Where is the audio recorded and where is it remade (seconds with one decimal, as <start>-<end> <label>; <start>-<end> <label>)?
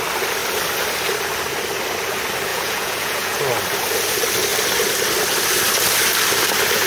0.0-2.5 recorded; 2.5-3.4 remade; 3.4-6.9 recorded